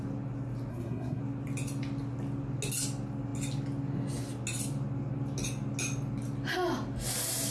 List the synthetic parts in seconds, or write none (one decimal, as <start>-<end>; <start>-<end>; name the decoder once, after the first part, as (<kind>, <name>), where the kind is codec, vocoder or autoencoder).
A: 0.7-1.2 (codec, SNAC)